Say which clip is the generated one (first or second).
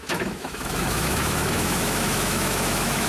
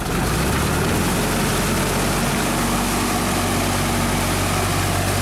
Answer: first